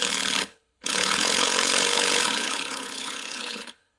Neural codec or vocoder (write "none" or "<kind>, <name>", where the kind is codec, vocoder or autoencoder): codec, HILCodec